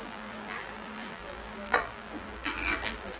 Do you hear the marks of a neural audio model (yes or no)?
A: yes